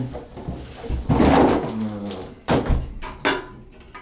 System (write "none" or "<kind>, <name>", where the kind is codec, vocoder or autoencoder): none